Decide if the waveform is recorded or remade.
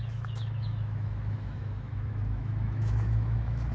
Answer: remade